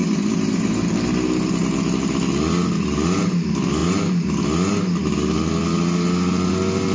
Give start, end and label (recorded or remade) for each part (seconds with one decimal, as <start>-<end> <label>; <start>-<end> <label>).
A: 0.0-0.9 remade; 0.9-6.9 recorded